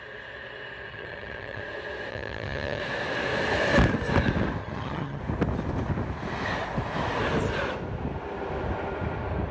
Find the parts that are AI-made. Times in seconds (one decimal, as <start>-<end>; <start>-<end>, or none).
0.9-1.6; 2.1-2.8; 4.6-5.2